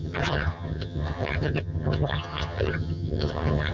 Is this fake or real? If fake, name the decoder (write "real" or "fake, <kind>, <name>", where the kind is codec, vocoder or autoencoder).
fake, vocoder, HiFi-GAN